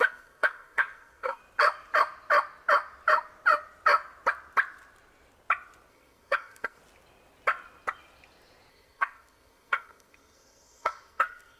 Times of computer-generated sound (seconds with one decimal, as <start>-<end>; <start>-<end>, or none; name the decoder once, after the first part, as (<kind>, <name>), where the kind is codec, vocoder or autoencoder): 0.0-1.4 (codec, SNAC); 5.9-6.8; 8.7-11.6